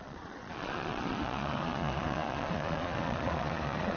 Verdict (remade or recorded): remade